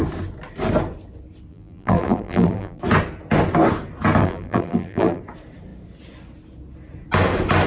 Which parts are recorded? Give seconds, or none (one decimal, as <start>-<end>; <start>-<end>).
0.0-1.5; 2.8-4.2; 5.2-7.7